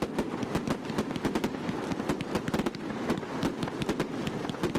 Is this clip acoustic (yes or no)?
yes